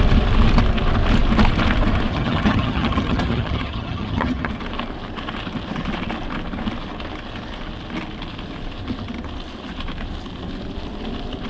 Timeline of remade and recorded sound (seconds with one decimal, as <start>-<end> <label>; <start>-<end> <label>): 0.0-2.1 recorded; 2.1-4.5 remade; 4.5-11.5 recorded